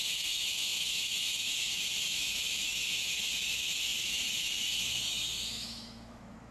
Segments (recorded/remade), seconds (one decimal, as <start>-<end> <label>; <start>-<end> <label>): 0.0-6.5 remade

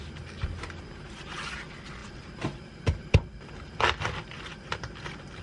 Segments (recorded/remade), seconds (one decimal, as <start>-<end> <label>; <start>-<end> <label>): 0.0-5.4 remade

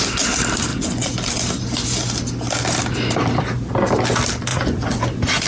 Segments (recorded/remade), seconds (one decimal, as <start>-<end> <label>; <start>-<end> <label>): 0.0-0.7 recorded; 0.7-1.3 remade; 1.3-4.5 recorded; 4.5-5.0 remade; 5.0-5.5 recorded

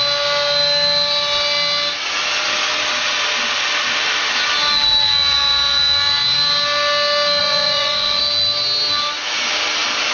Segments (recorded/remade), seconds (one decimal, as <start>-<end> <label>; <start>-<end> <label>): 0.0-7.4 recorded; 7.4-8.2 remade; 8.2-10.1 recorded

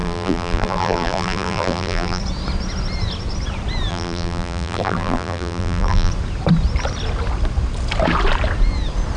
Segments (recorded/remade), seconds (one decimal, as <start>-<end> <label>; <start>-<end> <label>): 0.0-2.2 remade; 2.2-3.9 recorded; 3.9-6.1 remade; 6.1-9.2 recorded

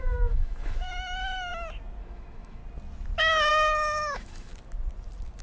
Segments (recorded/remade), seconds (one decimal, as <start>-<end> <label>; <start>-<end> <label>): 0.0-1.5 remade; 1.5-2.0 recorded; 2.0-2.6 remade; 2.6-3.5 recorded; 3.5-4.5 remade; 4.5-5.4 recorded

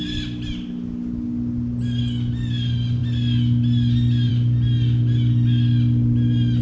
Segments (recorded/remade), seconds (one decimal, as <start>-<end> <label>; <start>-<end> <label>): 0.0-6.6 recorded

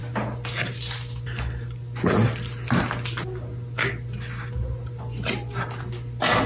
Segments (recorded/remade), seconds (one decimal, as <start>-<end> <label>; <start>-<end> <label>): 0.0-6.5 recorded